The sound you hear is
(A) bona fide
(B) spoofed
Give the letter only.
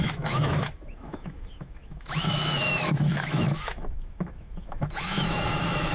B